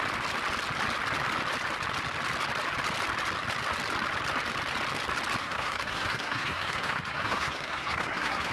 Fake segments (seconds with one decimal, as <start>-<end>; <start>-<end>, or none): 5.4-8.5